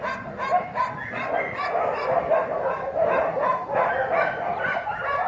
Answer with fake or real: real